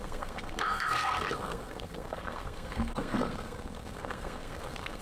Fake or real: fake